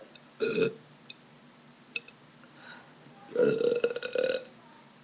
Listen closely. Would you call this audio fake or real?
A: real